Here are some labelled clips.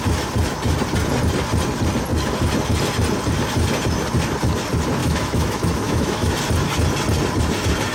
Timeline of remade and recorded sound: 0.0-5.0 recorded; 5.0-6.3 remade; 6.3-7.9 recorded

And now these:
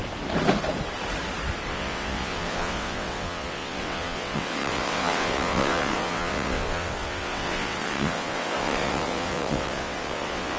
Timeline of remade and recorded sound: 0.0-1.7 recorded; 1.7-10.6 remade

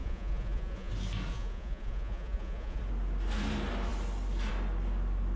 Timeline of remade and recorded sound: 0.0-0.9 remade; 0.9-1.3 recorded; 1.3-2.8 remade; 2.8-5.4 recorded

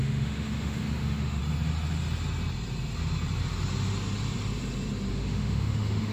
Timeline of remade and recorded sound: 0.0-1.4 remade; 1.4-5.1 recorded; 5.1-6.1 remade

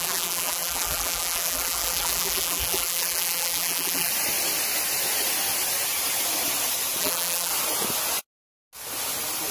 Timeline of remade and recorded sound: 0.0-4.1 remade; 4.1-7.0 recorded; 7.0-7.5 remade; 7.5-9.5 recorded

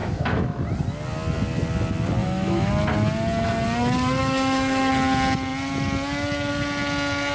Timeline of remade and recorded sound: 0.0-0.6 remade; 0.6-2.2 recorded; 2.2-2.7 remade; 2.7-4.2 recorded; 4.2-4.9 remade; 4.9-7.3 recorded

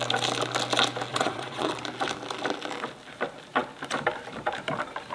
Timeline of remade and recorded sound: 0.0-1.1 recorded; 1.1-1.7 remade; 1.7-5.1 recorded

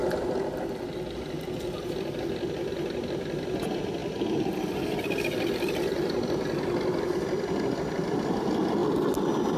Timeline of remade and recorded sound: 0.0-9.6 recorded